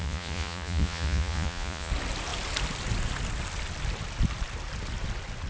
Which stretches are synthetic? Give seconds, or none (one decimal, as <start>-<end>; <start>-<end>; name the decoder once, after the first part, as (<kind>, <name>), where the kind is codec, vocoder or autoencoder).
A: 0.0-1.9 (vocoder, Vocos)